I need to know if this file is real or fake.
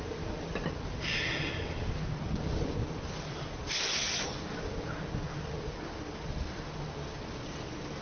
real